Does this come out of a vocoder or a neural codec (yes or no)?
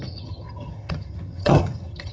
yes